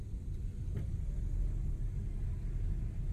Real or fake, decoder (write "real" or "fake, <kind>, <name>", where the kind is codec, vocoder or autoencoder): real